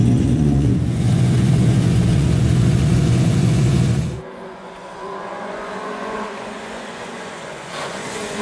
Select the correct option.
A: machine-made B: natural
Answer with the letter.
A